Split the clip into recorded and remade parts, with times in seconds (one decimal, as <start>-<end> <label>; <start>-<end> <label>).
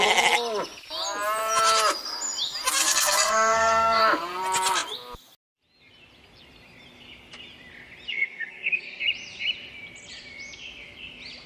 0.0-2.8 recorded; 2.8-4.0 remade; 4.0-8.1 recorded; 8.1-9.0 remade; 9.0-11.5 recorded